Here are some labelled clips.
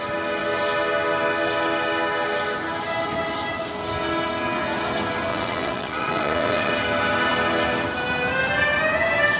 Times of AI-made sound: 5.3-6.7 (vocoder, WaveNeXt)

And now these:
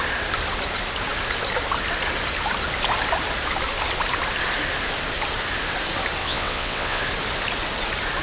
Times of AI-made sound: 6.2-7.0 (vocoder, WaveNeXt)

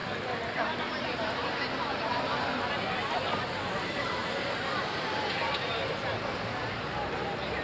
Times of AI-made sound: none

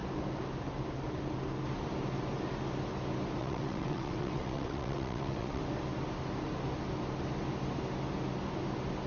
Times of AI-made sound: 3.4-5.6 (vocoder, WaveNeXt)

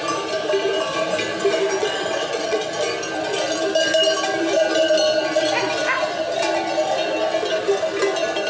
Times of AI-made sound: 1.8-2.7 (vocoder, WaveNeXt)

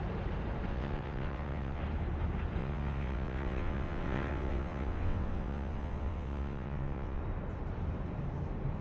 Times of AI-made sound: 0.7-1.8 (vocoder, WaveNeXt); 2.6-7.2

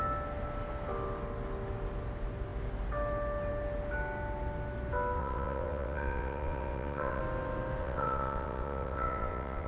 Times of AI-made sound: 5.2-7.2 (vocoder, WaveNeXt); 7.8-9.7